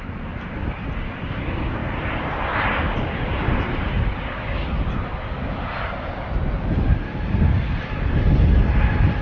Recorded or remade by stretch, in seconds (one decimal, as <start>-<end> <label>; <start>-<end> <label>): 0.0-7.3 recorded; 7.3-7.8 remade; 7.8-9.2 recorded